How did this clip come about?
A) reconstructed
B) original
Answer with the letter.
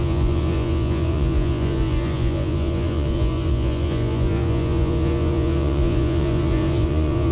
A